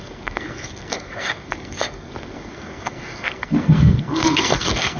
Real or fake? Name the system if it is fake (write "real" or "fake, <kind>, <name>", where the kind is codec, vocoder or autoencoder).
fake, codec, SNAC